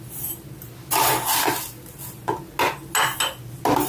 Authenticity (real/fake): real